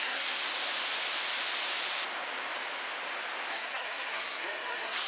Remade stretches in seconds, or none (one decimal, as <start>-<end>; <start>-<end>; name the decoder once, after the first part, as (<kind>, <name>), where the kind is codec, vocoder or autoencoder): 0.0-0.4 (codec, SNAC); 3.5-5.1